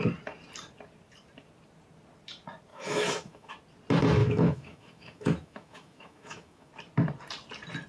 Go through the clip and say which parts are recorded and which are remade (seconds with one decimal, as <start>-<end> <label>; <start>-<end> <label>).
0.0-2.7 recorded; 2.7-3.5 remade; 3.5-4.2 recorded; 4.2-6.7 remade; 6.7-7.9 recorded